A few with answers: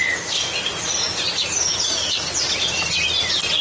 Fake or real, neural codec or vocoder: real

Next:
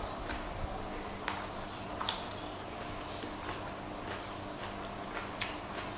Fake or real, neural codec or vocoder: real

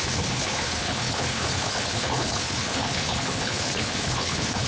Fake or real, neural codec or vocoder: fake, codec, HILCodec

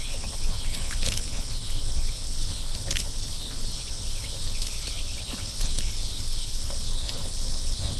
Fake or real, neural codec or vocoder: fake, codec, HILCodec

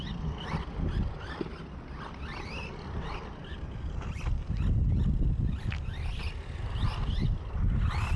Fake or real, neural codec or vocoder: real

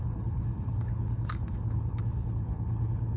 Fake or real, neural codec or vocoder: fake, codec, HILCodec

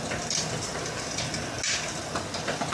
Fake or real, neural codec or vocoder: real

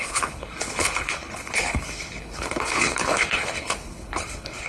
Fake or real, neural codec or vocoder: fake, codec, HILCodec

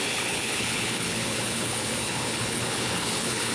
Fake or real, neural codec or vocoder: fake, codec, HILCodec